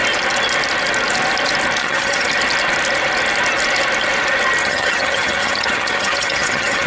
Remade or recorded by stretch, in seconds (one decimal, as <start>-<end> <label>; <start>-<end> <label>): 0.0-1.8 recorded; 1.8-2.3 remade; 2.3-4.6 recorded; 4.6-6.9 remade